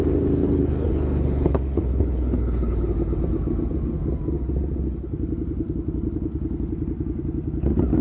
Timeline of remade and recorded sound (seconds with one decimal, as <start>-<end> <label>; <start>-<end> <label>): 0.0-0.4 recorded; 0.4-2.9 remade; 2.9-8.0 recorded